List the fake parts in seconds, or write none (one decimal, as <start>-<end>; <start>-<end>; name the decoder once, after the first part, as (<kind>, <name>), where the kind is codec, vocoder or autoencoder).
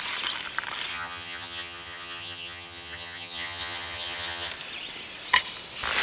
0.9-4.5 (vocoder, HiFi-GAN)